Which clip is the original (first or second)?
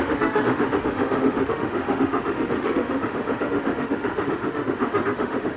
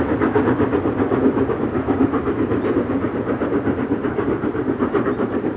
second